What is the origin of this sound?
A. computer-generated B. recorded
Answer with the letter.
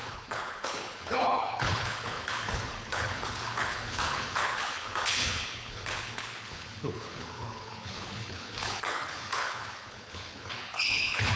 A